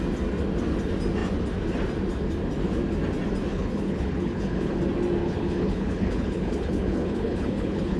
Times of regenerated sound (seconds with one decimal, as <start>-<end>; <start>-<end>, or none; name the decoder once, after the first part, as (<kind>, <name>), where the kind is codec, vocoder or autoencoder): 3.5-4.8 (codec, HILCodec); 5.2-8.0